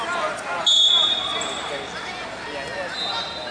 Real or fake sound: real